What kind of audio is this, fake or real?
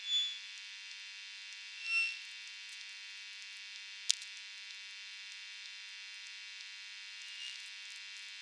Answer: real